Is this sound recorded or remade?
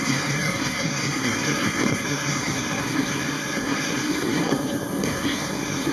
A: remade